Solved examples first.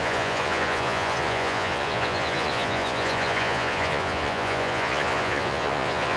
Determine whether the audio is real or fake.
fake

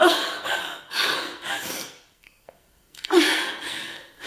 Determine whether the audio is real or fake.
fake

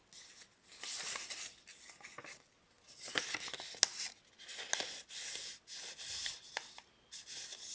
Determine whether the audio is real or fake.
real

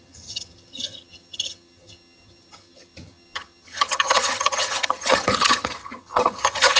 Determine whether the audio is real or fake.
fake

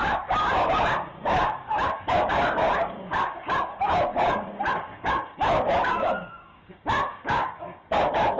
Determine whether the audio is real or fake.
fake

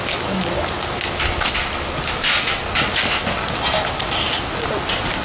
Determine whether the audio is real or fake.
real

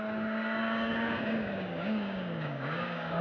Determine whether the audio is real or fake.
fake